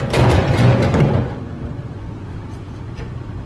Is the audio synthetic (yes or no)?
yes